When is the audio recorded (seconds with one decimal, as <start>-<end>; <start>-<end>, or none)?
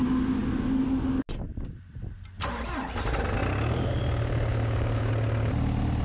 0.0-4.5; 5.1-6.0